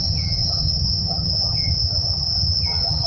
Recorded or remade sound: remade